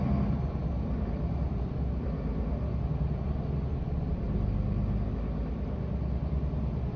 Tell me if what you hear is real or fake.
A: real